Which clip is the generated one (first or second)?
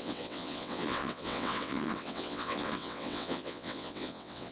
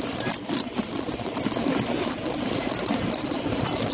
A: first